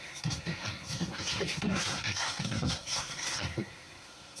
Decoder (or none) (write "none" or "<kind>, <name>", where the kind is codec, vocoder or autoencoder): codec, SNAC